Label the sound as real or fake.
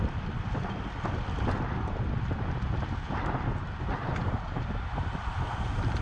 real